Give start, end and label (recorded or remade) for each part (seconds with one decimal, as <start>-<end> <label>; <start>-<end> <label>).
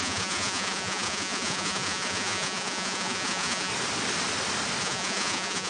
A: 0.0-3.7 remade; 3.7-4.8 recorded; 4.8-5.7 remade